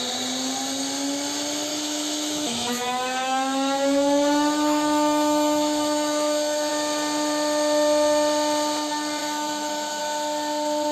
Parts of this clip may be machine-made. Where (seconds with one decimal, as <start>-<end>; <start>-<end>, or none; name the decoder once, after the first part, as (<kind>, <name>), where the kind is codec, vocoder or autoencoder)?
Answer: 1.7-6.7 (autoencoder, DAC-VAE); 9.2-10.0